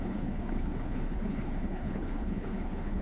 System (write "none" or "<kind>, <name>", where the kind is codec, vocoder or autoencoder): codec, HILCodec